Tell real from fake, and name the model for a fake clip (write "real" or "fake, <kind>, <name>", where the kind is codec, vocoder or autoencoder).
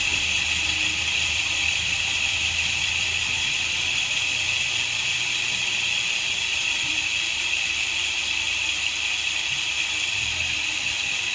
fake, vocoder, BigVGAN v2